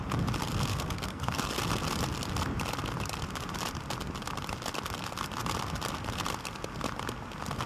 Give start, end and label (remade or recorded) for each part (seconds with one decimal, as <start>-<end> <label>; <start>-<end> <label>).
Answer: 0.0-0.7 recorded; 0.7-1.5 remade; 1.5-7.7 recorded